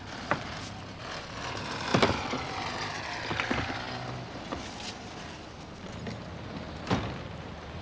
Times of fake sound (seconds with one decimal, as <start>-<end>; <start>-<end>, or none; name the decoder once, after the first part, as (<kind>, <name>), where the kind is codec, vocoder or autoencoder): none